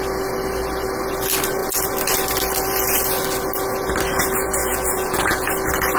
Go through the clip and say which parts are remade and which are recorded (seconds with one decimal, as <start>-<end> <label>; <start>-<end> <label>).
0.0-4.6 recorded; 4.6-5.5 remade; 5.5-6.0 recorded